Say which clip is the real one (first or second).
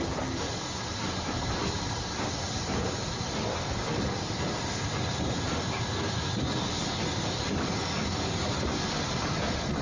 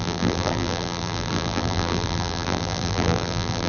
first